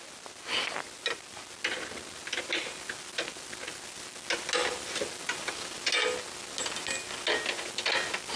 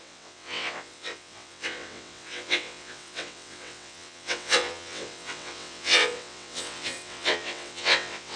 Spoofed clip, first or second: second